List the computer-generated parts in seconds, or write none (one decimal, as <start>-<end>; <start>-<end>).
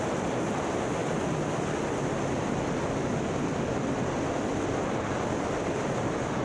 none